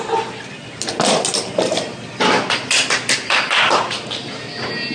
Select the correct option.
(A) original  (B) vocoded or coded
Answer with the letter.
A